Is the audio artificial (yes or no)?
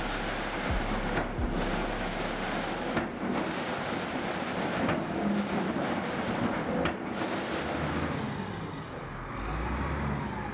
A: no